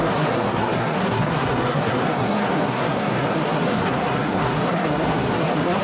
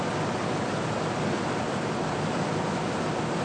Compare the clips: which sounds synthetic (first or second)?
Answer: first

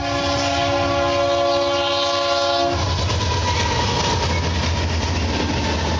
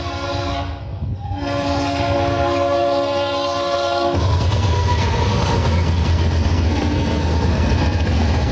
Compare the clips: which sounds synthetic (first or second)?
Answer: second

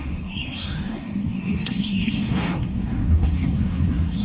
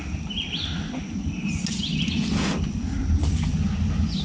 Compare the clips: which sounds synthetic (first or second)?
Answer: first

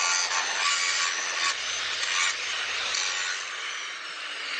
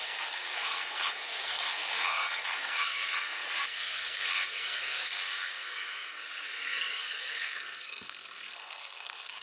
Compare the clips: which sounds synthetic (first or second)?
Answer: second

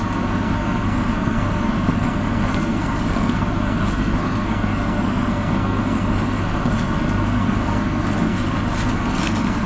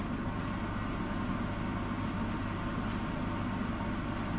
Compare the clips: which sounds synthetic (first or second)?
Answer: first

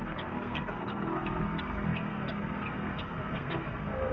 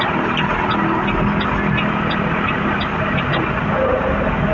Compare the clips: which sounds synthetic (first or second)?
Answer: first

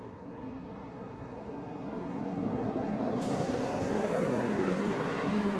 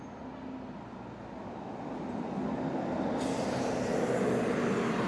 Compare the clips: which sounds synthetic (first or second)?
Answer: first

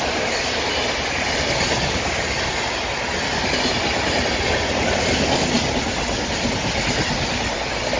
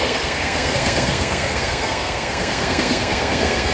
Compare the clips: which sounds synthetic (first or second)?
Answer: second